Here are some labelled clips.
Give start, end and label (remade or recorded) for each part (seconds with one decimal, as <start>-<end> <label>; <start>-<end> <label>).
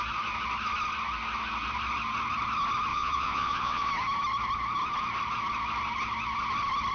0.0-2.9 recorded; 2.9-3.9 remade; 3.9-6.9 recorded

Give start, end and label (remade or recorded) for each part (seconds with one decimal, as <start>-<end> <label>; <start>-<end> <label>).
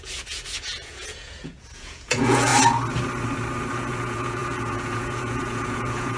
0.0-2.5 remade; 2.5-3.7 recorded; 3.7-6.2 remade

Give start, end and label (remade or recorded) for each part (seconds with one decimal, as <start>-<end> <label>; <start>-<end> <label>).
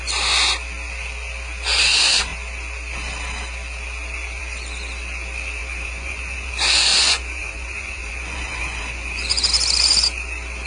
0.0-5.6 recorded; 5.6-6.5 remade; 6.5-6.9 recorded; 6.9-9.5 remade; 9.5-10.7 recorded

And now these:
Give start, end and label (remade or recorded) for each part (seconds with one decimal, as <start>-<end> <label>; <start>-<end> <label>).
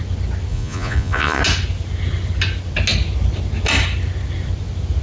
0.0-0.5 recorded; 0.5-1.4 remade; 1.4-5.0 recorded